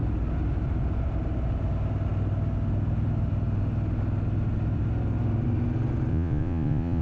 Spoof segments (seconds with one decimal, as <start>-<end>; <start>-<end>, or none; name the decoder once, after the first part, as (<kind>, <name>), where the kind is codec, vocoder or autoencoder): 6.1-7.0 (vocoder, Vocos)